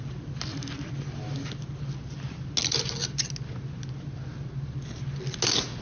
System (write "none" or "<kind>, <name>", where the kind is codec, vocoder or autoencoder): none